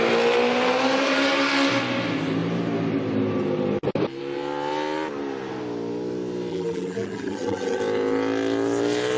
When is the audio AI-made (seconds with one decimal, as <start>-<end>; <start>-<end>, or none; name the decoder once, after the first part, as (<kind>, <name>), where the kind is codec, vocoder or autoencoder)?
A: 6.5-7.8 (vocoder, BigVGAN v2)